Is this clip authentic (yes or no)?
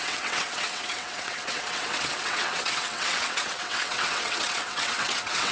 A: no